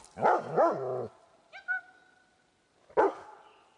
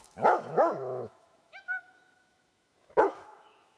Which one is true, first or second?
first